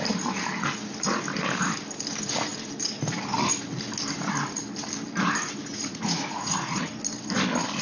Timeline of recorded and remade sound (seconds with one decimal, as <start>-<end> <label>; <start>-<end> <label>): 0.0-5.7 recorded; 5.7-6.9 remade; 6.9-7.8 recorded